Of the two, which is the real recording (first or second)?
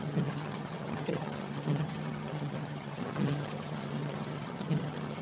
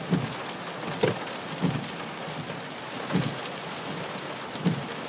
second